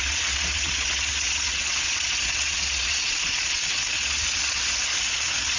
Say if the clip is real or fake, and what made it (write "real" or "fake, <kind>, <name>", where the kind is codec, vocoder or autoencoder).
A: fake, vocoder, Vocos